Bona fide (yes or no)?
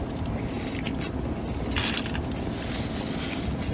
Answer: yes